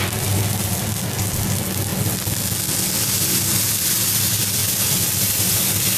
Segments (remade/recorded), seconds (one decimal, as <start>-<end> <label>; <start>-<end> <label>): 0.0-6.0 recorded